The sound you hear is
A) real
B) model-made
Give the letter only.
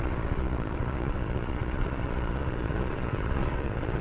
B